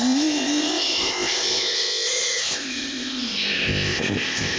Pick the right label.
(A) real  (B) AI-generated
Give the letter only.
B